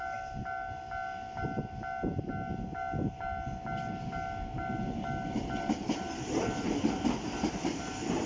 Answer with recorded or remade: recorded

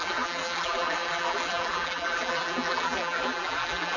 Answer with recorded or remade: remade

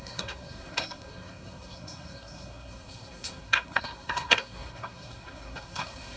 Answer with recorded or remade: remade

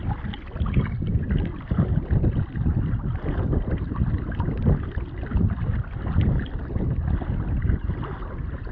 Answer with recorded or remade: recorded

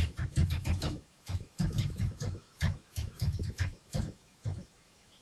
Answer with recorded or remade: remade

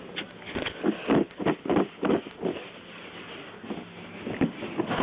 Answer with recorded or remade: recorded